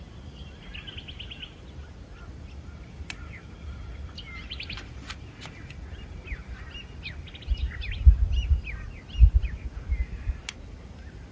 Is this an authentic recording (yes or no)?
yes